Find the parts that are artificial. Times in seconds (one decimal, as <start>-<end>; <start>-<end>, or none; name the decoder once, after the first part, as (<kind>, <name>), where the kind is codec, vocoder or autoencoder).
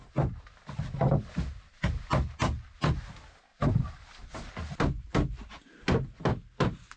3.5-4.5 (vocoder, BigVGAN v2)